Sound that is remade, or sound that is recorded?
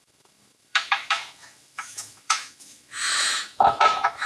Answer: remade